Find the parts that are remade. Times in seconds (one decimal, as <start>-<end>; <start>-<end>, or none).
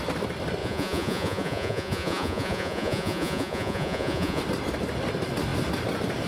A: 0.6-4.4